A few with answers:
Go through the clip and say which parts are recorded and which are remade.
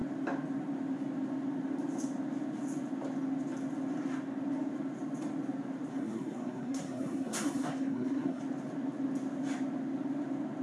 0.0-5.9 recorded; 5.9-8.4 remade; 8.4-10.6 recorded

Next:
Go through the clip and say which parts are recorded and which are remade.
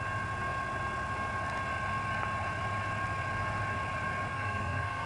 0.0-4.3 recorded; 4.3-5.1 remade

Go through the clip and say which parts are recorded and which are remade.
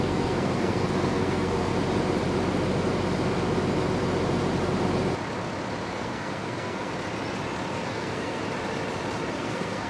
0.0-1.7 remade; 1.7-5.9 recorded; 5.9-6.9 remade; 6.9-7.7 recorded; 7.7-8.4 remade; 8.4-9.3 recorded; 9.3-9.9 remade